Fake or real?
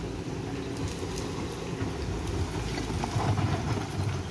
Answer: real